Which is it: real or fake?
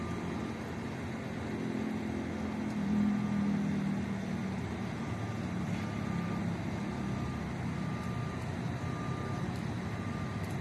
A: real